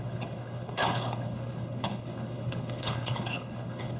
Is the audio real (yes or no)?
no